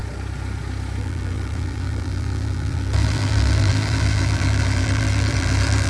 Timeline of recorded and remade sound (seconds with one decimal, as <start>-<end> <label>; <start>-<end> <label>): 0.0-1.0 recorded; 1.0-5.9 remade